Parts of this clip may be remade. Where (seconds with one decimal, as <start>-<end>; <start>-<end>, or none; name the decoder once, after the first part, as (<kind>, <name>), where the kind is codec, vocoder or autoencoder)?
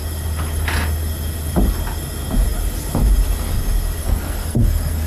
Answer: 4.0-5.1 (codec, SNAC)